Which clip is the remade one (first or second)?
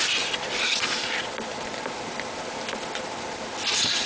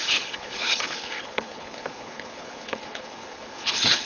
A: second